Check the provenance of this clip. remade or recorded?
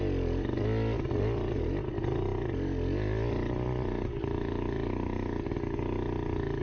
recorded